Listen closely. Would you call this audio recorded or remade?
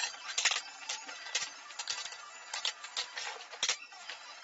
recorded